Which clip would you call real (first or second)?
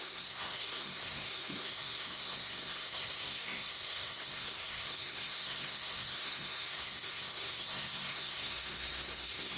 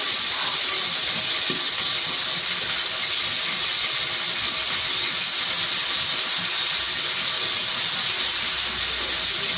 second